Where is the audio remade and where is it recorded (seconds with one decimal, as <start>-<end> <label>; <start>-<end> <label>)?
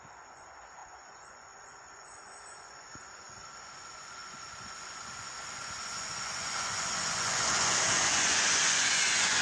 0.0-9.4 remade